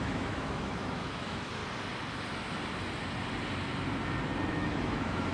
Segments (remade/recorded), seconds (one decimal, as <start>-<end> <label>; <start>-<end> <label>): 0.0-1.6 remade; 1.6-4.5 recorded; 4.5-5.3 remade